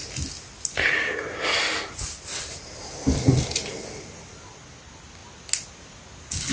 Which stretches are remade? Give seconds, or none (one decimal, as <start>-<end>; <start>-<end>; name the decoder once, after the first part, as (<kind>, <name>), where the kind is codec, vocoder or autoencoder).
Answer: none